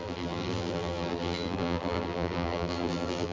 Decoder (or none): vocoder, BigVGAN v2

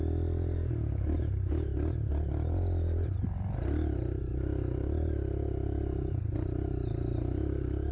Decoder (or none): none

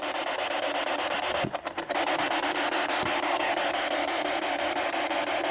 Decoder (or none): none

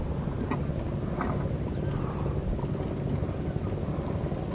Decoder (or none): none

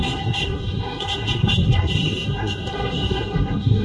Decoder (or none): codec, SNAC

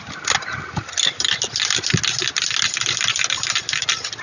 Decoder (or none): none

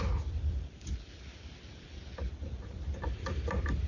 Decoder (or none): none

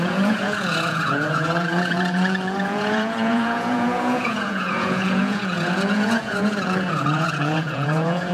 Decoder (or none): vocoder, Vocos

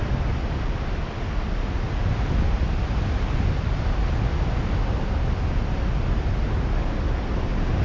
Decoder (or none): none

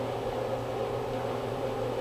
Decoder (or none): none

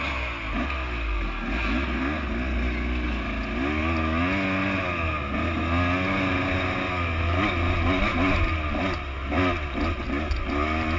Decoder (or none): none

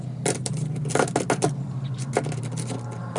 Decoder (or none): none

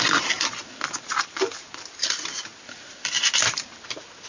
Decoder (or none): none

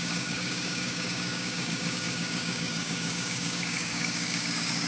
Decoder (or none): codec, DAC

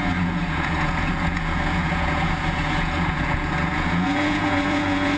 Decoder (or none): vocoder, Vocos